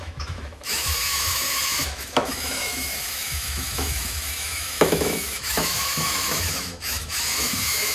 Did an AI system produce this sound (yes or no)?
yes